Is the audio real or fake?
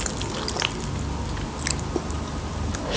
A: real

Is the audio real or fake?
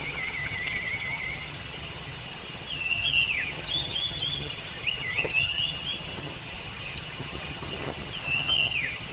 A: fake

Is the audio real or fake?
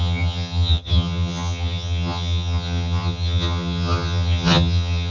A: fake